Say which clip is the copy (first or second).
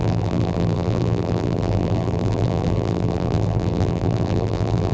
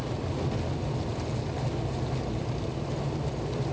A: first